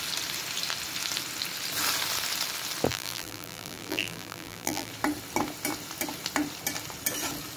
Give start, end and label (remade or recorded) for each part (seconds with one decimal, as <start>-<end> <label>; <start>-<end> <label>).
0.0-2.9 recorded; 2.9-4.9 remade; 4.9-7.6 recorded